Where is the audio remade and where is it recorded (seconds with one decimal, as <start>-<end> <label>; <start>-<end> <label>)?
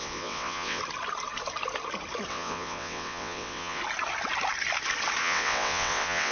0.0-0.8 remade; 0.8-2.3 recorded; 2.3-3.8 remade; 3.8-5.2 recorded; 5.2-6.3 remade